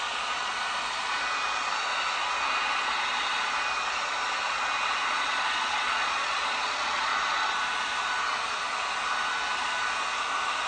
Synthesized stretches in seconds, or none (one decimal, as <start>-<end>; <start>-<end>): 0.0-0.5; 5.1-7.1